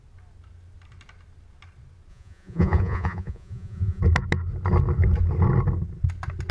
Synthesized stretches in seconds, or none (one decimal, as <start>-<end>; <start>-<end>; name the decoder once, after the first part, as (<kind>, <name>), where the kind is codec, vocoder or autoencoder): 2.1-4.0 (vocoder, Vocos)